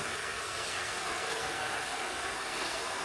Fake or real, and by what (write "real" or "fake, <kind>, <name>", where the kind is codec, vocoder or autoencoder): fake, codec, SNAC